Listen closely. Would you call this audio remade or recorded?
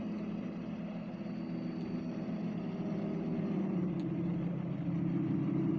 recorded